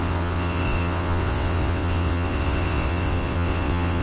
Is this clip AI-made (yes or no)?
yes